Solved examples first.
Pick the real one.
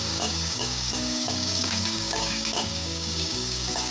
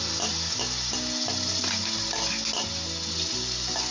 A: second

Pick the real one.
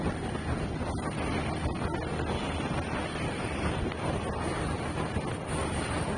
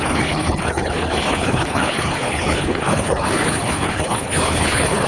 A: first